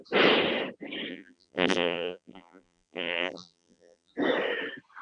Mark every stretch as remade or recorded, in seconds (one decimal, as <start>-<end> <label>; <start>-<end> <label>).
0.0-1.1 recorded; 1.1-4.1 remade; 4.1-5.0 recorded